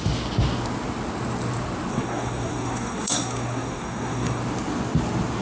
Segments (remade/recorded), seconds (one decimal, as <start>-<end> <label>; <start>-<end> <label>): 0.0-1.9 recorded; 1.9-4.4 remade; 4.4-5.4 recorded